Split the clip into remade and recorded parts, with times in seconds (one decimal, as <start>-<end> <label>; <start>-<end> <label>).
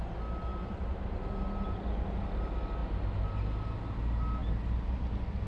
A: 0.0-5.5 recorded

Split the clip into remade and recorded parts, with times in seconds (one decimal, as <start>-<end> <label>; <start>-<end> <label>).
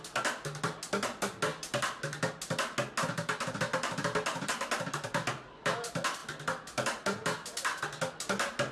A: 0.0-8.7 recorded